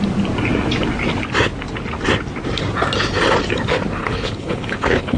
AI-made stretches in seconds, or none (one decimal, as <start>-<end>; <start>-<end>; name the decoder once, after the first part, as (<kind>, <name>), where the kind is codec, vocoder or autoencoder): 4.0-5.2 (codec, HILCodec)